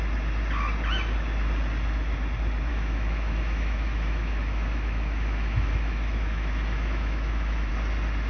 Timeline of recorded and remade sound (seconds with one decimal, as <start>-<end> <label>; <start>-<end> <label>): 0.0-2.7 recorded; 2.7-7.7 remade; 7.7-8.3 recorded